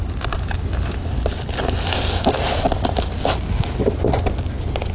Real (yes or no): yes